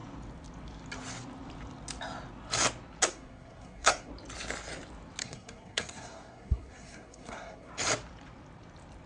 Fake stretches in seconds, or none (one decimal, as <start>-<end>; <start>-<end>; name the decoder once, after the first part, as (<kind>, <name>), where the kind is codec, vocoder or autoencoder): 3.1-4.1 (codec, SNAC); 5.2-7.7